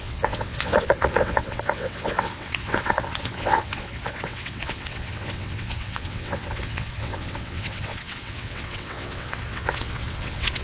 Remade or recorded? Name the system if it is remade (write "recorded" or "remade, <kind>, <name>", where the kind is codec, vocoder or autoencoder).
remade, vocoder, WaveNeXt